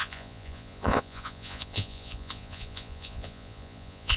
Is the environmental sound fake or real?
fake